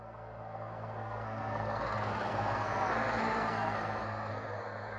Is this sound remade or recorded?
remade